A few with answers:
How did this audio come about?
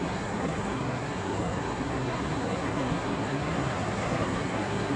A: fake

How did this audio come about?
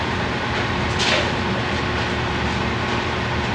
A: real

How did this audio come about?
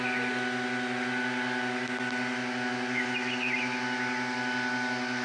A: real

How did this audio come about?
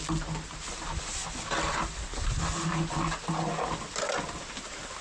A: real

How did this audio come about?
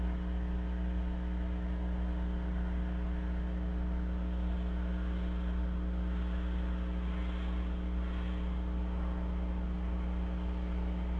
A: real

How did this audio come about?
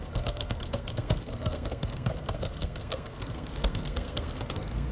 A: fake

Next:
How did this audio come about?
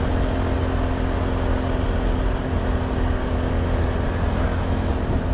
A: real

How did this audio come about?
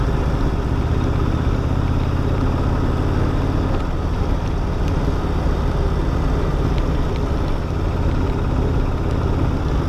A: real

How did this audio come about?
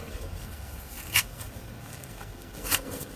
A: fake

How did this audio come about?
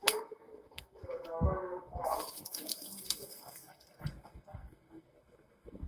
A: fake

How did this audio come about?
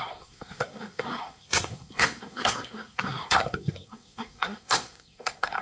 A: fake